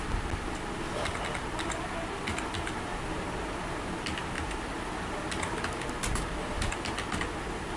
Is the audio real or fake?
real